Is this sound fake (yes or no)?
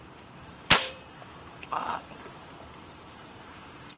yes